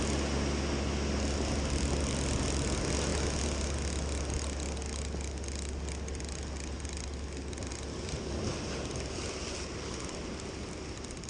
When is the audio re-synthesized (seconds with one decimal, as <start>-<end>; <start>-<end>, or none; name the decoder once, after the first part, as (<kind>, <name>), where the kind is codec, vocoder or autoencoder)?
none